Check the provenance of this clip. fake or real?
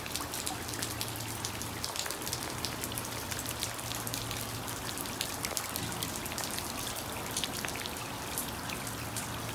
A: real